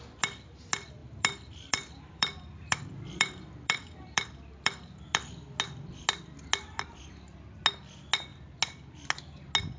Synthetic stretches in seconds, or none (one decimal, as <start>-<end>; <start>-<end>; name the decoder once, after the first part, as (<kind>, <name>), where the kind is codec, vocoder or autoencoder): 1.0-5.6 (vocoder, BigVGAN v2)